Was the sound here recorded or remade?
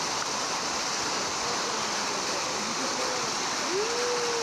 recorded